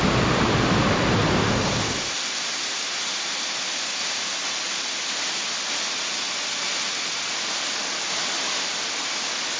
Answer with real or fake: real